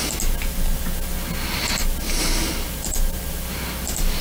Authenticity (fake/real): real